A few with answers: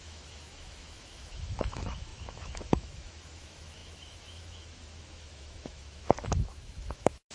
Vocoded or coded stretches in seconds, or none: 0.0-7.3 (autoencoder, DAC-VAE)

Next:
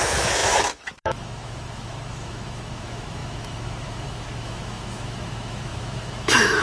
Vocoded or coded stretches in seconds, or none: 0.0-6.6 (autoencoder, DAC-VAE)

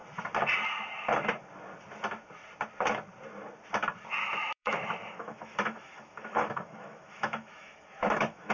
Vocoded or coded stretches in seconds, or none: 4.2-8.5 (autoencoder, DAC-VAE)

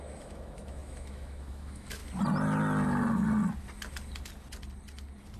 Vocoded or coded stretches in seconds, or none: 0.0-2.0 (autoencoder, DAC-VAE)

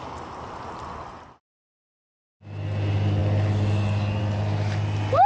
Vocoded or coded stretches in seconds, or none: none

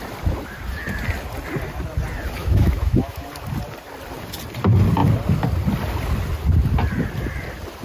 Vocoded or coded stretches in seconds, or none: 2.4-3.3 (autoencoder, DAC-VAE)